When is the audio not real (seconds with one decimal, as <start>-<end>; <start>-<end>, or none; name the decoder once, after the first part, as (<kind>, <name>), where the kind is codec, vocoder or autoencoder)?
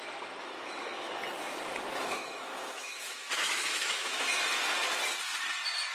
0.4-1.1 (autoencoder, DAC-VAE); 1.9-4.2